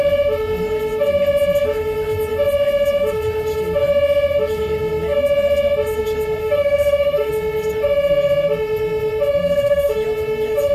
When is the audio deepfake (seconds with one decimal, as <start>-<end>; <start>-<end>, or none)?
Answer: 6.4-7.3; 9.4-9.9

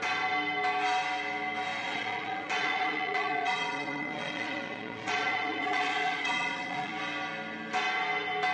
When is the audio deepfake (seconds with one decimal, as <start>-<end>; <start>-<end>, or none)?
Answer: 1.8-6.9